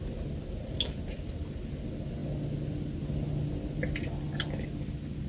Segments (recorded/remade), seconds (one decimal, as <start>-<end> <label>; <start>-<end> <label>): 0.0-5.3 recorded